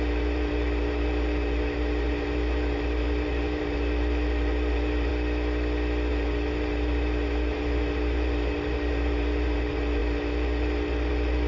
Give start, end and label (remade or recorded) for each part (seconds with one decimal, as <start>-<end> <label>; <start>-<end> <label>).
0.0-5.1 remade; 5.1-6.1 recorded; 6.1-11.5 remade